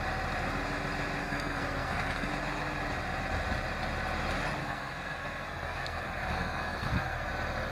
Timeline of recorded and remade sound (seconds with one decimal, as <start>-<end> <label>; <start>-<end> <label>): 0.0-1.2 recorded; 1.2-2.3 remade; 2.3-4.6 recorded; 4.6-7.3 remade; 7.3-7.7 recorded